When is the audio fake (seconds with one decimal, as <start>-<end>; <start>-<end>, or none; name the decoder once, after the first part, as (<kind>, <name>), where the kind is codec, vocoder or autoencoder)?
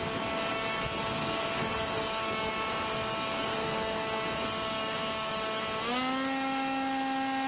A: 0.5-2.5 (codec, DAC); 3.1-5.6